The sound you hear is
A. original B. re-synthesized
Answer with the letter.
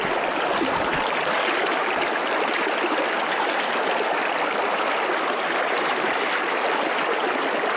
A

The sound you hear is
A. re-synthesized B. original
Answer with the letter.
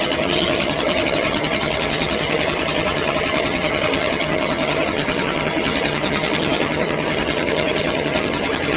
A